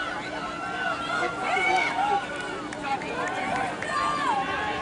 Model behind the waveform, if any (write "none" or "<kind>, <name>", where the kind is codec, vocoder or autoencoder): vocoder, BigVGAN v2